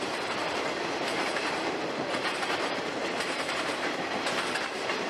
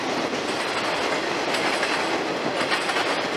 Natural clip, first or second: second